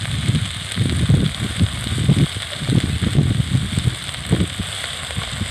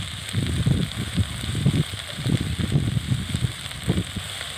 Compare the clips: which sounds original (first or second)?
first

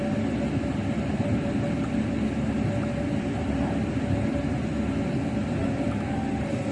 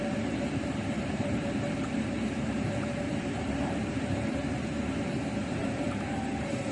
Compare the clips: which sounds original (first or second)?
first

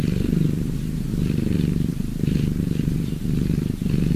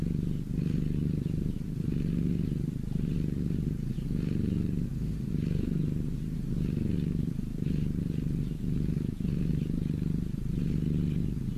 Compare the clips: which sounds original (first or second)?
second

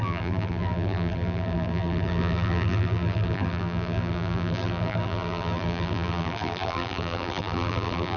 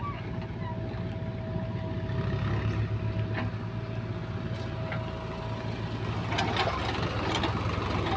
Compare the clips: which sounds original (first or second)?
second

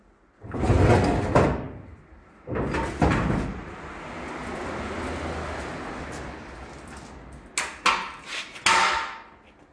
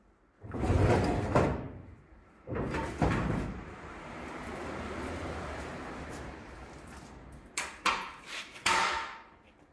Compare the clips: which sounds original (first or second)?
first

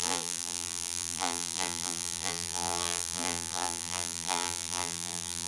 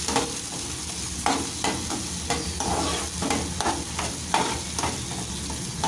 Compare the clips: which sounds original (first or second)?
second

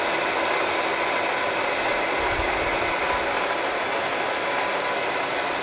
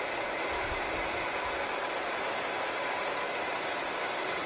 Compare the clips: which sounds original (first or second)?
first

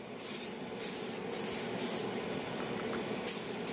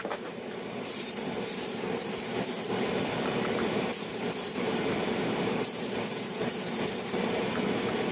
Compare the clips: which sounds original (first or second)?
first